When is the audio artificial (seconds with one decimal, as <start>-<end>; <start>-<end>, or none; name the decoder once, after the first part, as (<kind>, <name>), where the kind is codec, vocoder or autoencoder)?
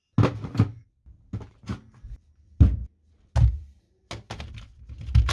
none